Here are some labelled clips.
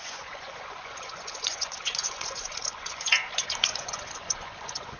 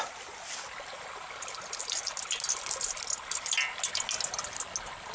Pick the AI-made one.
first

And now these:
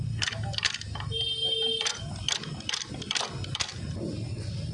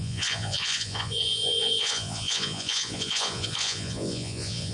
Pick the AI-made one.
second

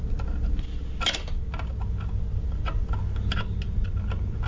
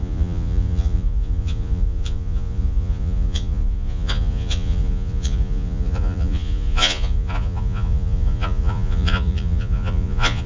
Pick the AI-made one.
second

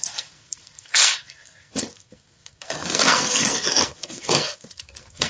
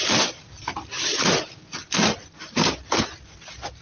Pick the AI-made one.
first